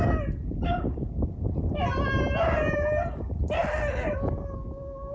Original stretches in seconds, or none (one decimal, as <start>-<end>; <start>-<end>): 0.0-5.1